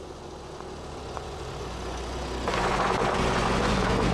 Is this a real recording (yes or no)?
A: no